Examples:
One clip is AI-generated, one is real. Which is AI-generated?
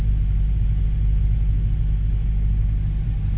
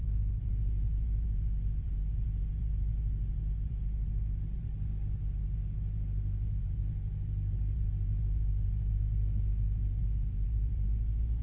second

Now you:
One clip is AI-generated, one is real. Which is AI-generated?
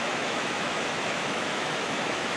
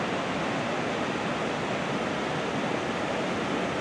first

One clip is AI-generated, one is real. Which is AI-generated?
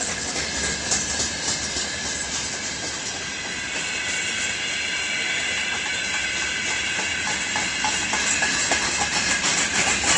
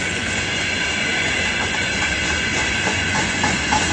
second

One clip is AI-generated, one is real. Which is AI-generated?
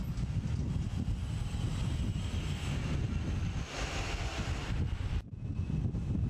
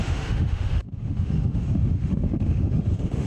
second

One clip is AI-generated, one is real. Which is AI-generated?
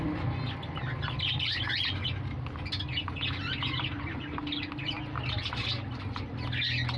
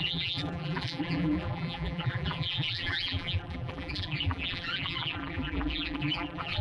second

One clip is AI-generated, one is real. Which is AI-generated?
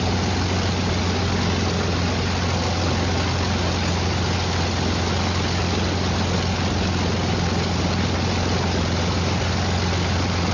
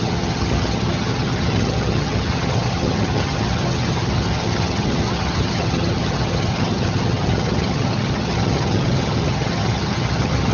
second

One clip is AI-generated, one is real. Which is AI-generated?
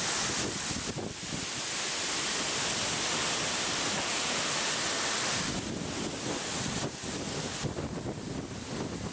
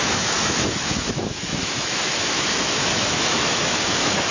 second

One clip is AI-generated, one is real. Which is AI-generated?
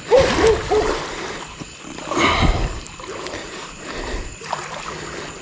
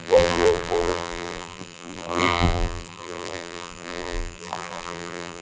second